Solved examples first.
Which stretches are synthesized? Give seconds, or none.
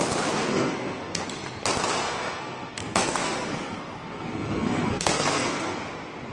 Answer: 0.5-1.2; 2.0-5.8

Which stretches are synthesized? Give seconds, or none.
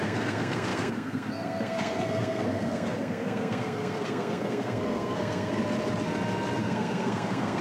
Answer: 0.0-5.6; 6.6-7.6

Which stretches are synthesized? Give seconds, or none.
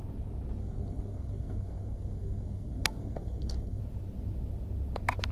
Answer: 0.6-3.8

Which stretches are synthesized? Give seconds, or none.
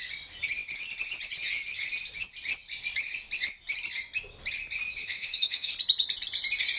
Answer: 5.0-5.7